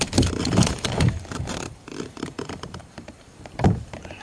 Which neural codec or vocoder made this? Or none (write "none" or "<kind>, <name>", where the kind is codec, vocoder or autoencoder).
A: vocoder, BigVGAN v2